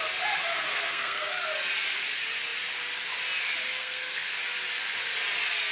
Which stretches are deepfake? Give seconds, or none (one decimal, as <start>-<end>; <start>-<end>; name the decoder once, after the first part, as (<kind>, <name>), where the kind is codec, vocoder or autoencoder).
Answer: 0.7-1.3 (codec, SNAC); 3.8-4.3